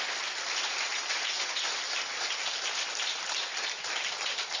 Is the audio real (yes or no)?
yes